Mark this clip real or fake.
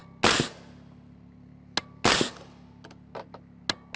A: real